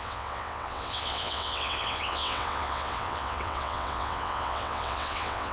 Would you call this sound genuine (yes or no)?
no